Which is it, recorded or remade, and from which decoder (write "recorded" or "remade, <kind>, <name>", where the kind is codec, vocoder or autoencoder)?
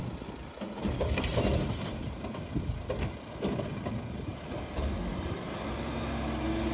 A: recorded